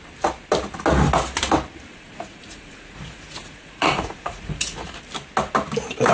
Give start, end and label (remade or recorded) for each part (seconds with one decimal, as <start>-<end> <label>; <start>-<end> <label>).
0.0-1.9 recorded; 1.9-5.0 remade; 5.0-6.1 recorded